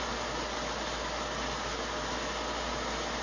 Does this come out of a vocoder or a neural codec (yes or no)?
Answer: no